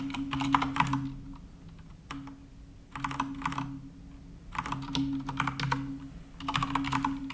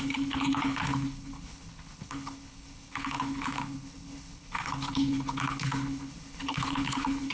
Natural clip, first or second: first